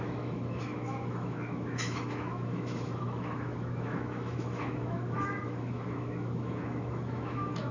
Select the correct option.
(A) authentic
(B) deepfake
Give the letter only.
B